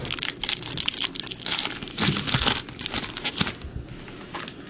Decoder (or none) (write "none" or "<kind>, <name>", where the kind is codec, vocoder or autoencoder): none